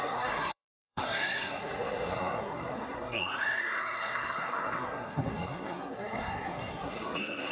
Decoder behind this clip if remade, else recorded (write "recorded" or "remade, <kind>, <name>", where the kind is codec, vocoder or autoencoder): remade, codec, SNAC